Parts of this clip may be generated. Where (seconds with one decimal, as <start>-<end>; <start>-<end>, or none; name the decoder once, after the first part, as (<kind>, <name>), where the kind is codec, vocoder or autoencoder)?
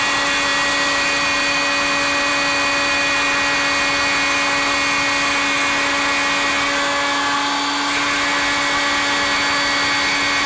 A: none